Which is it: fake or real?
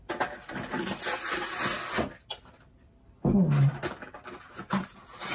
real